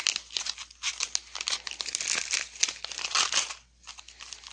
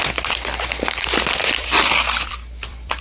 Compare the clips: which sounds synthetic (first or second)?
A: second